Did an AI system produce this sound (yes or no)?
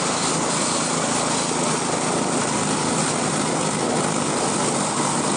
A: no